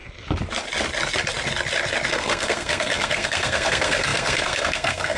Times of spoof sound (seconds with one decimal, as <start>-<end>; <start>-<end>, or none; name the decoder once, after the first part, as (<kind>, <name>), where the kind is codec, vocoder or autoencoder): 2.1-5.2 (codec, SNAC)